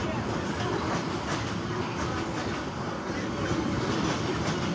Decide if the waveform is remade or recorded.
recorded